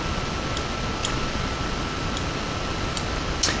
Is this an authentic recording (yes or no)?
yes